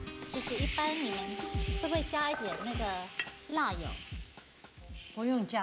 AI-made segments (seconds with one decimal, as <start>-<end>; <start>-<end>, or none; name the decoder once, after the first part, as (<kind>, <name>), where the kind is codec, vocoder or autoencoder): 3.5-4.9 (autoencoder, DAC-VAE)